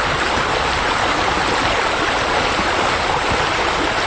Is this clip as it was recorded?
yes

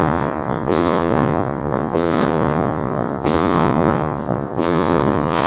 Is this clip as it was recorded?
no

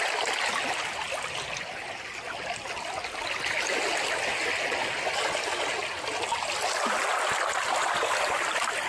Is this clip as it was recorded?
yes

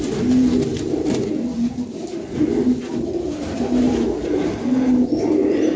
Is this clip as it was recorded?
yes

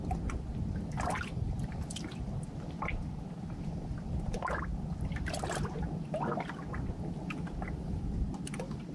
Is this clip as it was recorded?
yes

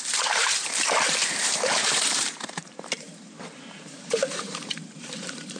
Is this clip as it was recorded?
no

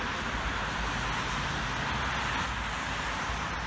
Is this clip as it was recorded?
yes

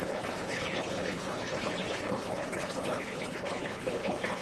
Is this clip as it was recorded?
no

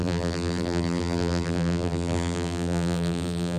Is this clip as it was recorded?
no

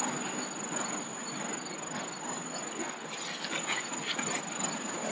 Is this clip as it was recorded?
yes